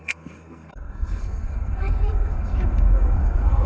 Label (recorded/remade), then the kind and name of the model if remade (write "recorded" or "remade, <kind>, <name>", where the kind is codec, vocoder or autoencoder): remade, codec, SNAC